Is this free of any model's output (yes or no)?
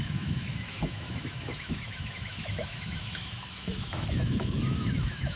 no